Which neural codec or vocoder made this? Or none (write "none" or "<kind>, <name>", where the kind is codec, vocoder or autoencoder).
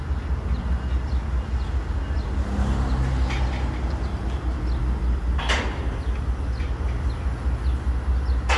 none